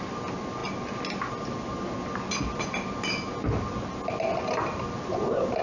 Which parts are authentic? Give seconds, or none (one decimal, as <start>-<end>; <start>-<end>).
0.0-5.6